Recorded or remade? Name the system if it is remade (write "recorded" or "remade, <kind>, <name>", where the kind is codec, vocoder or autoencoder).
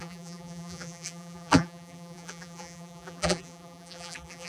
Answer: remade, vocoder, BigVGAN v2